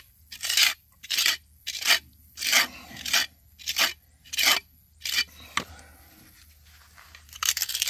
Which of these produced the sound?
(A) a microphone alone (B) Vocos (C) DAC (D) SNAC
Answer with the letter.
A